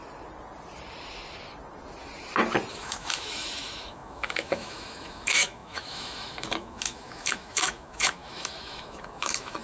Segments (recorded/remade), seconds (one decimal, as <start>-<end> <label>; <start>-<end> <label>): 0.0-2.7 recorded; 2.7-9.6 remade